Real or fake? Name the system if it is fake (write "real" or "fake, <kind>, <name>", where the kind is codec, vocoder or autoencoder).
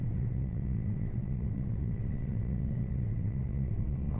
fake, vocoder, WaveNeXt